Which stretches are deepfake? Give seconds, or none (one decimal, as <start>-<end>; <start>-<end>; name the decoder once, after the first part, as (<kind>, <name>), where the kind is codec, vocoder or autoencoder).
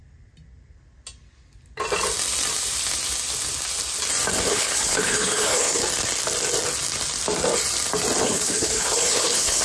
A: 4.5-5.8 (codec, HILCodec); 8.2-9.6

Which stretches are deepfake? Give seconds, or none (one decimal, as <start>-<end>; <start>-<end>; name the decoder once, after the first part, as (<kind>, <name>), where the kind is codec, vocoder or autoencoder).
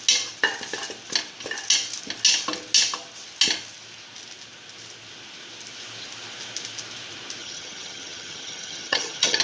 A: 7.4-9.4 (vocoder, HiFi-GAN)